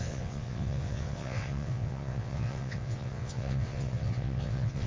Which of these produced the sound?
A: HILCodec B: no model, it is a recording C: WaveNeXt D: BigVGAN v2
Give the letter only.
C